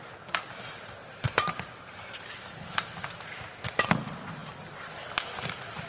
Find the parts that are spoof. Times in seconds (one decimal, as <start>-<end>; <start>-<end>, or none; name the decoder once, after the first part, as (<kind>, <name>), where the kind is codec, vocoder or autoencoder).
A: 1.0-2.8 (vocoder, BigVGAN v2)